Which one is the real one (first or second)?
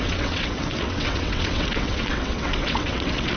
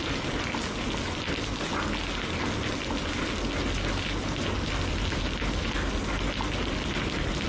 second